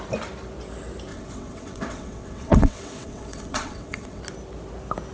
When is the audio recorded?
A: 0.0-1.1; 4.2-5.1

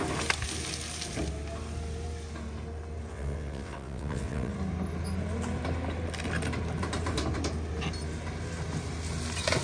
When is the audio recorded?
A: 0.0-3.1; 4.5-9.6

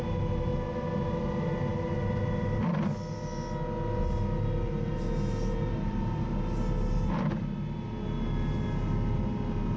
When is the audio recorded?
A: 0.0-9.8